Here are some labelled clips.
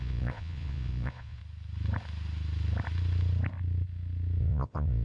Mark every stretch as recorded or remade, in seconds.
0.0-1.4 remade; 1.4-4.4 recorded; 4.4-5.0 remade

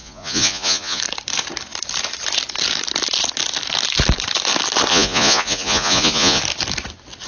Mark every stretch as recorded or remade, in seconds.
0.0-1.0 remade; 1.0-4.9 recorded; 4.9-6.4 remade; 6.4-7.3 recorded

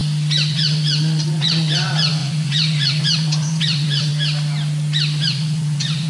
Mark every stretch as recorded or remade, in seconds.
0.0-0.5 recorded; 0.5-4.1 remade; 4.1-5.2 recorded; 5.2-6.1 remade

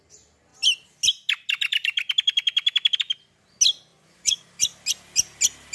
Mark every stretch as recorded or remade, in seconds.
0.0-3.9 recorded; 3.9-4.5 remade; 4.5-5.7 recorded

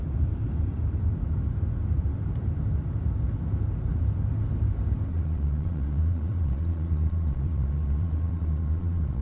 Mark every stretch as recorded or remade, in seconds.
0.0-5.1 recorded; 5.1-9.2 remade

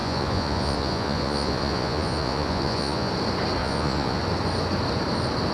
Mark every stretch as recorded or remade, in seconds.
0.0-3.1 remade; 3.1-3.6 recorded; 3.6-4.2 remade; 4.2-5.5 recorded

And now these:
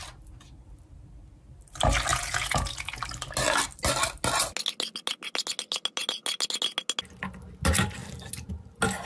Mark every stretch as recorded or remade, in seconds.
0.0-2.1 recorded; 2.1-3.0 remade; 3.0-9.1 recorded